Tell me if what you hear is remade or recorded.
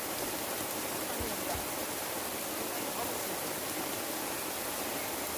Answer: recorded